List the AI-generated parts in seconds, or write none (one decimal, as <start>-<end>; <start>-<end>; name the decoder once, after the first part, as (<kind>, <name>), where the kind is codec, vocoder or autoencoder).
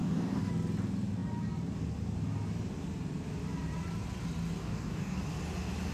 0.0-0.5 (codec, DAC); 4.6-5.2